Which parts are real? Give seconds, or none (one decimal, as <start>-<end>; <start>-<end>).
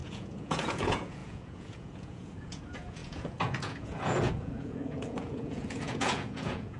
none